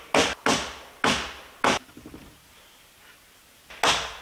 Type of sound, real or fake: real